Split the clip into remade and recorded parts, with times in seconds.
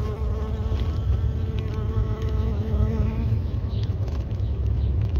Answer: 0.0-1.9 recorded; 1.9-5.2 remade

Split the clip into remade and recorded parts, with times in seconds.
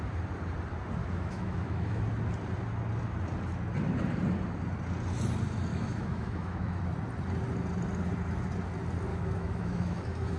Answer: 0.0-1.0 recorded; 1.0-2.0 remade; 2.0-5.7 recorded; 5.7-6.8 remade; 6.8-9.1 recorded; 9.1-10.4 remade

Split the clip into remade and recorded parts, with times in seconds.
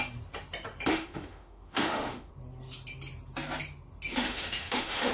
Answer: 0.0-0.9 recorded; 0.9-2.3 remade; 2.3-4.1 recorded; 4.1-5.1 remade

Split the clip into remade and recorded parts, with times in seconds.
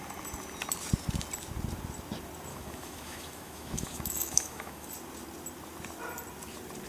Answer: 0.0-2.5 recorded; 2.5-4.9 remade; 4.9-6.9 recorded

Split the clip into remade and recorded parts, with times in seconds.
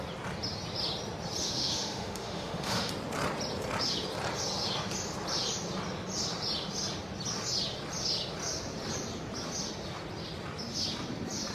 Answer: 0.0-1.4 recorded; 1.4-2.9 remade; 2.9-11.5 recorded